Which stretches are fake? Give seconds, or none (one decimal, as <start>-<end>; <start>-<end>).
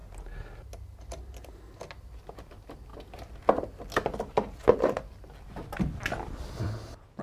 none